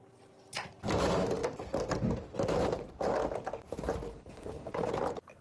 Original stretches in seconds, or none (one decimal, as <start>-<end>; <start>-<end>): 0.0-4.1; 4.9-5.4